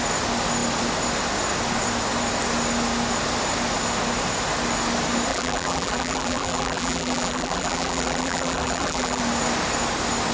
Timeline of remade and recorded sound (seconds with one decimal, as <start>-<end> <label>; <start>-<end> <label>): 0.0-5.3 recorded; 5.3-9.2 remade; 9.2-10.3 recorded